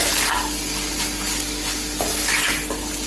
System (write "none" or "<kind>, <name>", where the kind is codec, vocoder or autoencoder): none